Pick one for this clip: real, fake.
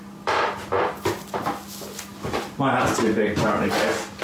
real